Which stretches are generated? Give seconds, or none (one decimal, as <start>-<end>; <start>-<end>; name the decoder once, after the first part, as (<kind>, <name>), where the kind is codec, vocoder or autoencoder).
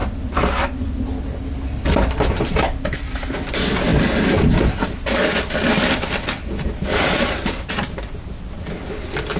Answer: 3.9-7.7 (vocoder, BigVGAN v2)